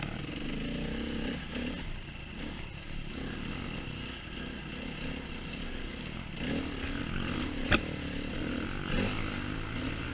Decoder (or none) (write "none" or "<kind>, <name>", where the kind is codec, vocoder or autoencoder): none